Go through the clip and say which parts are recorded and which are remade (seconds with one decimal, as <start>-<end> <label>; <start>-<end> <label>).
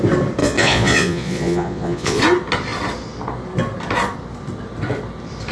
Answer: 0.0-0.4 recorded; 0.4-2.2 remade; 2.2-5.5 recorded